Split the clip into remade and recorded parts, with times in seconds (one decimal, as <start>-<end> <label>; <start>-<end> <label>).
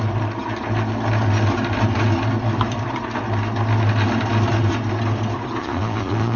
0.0-5.6 recorded; 5.6-6.4 remade